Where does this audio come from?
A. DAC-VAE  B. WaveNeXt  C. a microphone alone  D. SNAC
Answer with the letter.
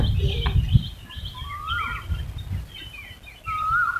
C